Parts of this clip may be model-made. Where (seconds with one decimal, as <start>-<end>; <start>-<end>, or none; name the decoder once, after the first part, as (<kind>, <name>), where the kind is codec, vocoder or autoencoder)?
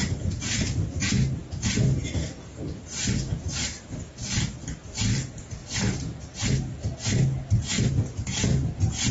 none